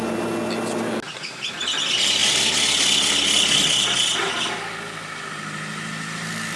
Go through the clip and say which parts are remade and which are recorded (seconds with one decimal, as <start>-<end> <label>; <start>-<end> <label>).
0.0-6.6 recorded